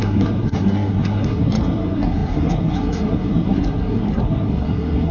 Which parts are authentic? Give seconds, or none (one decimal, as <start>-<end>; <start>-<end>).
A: none